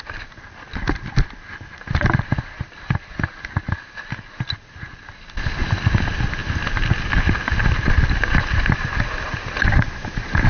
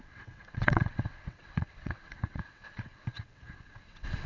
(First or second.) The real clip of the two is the first